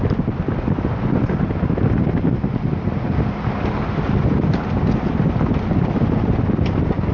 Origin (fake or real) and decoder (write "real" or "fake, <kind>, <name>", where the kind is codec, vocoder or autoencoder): real